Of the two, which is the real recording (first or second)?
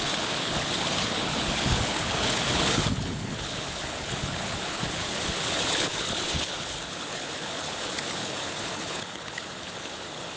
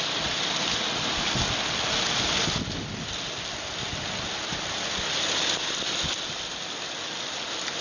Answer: second